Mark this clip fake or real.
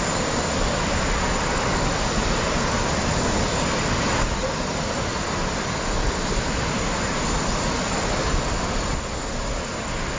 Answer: real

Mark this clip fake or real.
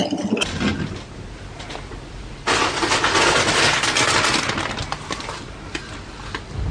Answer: real